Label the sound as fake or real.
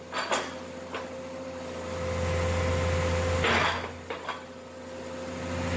real